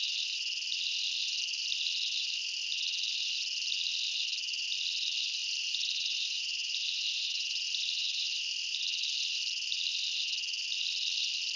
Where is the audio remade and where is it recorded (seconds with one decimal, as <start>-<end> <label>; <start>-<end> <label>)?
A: 0.0-5.4 recorded; 5.4-8.8 remade; 8.8-11.6 recorded